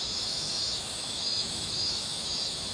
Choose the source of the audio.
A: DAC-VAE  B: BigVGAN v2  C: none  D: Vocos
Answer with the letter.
A